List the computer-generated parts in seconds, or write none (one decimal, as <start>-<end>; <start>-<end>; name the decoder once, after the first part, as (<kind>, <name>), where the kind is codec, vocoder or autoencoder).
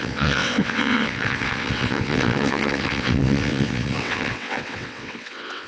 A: 0.0-5.7 (vocoder, WaveNeXt)